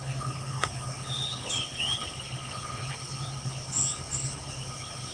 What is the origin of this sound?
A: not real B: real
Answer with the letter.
A